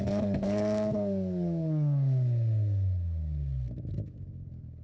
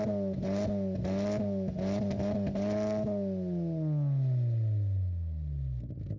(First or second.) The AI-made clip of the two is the first